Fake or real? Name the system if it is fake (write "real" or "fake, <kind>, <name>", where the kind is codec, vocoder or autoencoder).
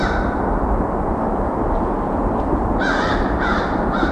real